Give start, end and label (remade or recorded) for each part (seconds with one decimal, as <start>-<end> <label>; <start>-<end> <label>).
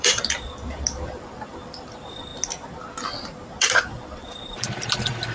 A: 0.0-2.3 remade; 2.3-3.6 recorded; 3.6-5.3 remade